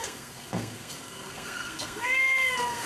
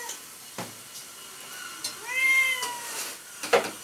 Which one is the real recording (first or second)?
second